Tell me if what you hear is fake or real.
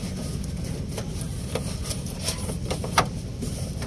real